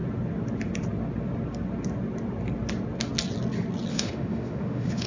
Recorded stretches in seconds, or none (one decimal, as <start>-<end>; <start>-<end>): 0.0-3.9